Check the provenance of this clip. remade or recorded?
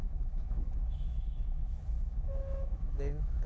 remade